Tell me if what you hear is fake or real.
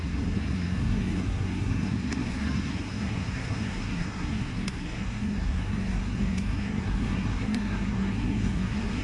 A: fake